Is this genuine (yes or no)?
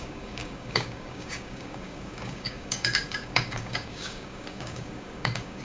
no